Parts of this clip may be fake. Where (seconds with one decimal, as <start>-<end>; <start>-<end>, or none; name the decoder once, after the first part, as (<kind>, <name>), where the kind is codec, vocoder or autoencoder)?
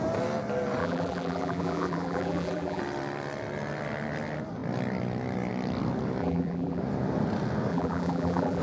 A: 0.8-2.8 (vocoder, BigVGAN v2); 6.2-6.8; 7.7-8.6